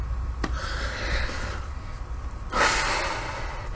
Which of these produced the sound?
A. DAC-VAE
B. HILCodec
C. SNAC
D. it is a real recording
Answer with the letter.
D